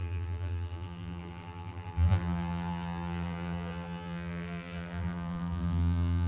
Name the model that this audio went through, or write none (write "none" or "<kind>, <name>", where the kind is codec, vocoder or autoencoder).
vocoder, BigVGAN v2